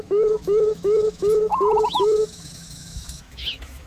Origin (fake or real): fake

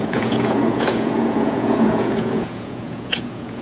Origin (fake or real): fake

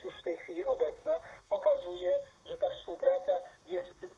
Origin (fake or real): fake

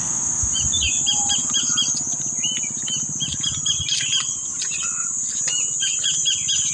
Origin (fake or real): real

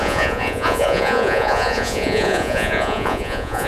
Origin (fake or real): fake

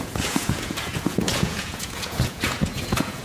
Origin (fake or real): fake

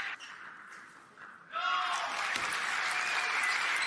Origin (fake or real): real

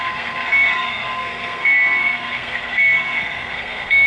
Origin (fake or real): fake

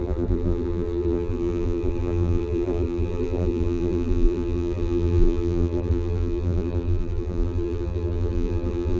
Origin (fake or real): fake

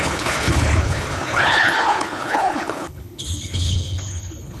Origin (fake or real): fake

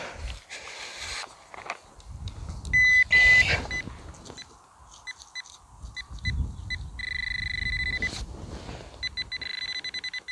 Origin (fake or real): real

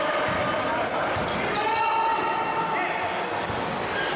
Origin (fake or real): real